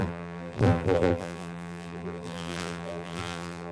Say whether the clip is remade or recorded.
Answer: remade